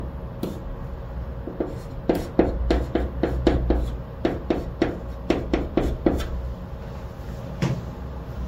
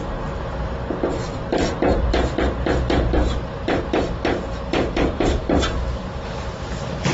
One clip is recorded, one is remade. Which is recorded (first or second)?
first